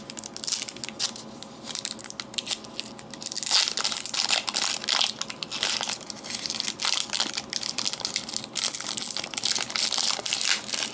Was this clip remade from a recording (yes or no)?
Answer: no